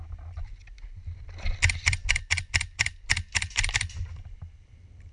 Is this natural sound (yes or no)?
no